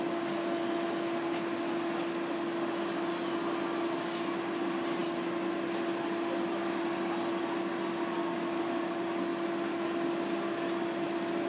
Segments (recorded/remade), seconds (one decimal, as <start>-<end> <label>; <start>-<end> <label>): 0.0-11.5 recorded